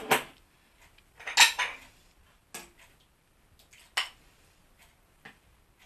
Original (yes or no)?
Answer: yes